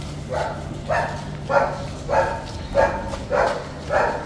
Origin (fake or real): real